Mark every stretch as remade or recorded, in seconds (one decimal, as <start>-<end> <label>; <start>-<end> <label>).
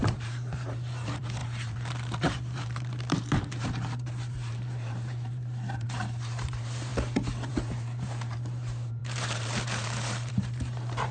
0.0-6.9 remade; 6.9-7.5 recorded; 7.5-11.1 remade